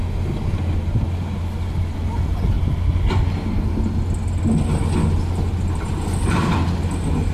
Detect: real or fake real